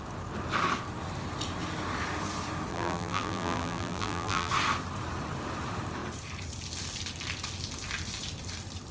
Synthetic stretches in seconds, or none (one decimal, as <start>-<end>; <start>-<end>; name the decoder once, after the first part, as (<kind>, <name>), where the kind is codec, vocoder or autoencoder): 2.7-4.5 (vocoder, BigVGAN v2)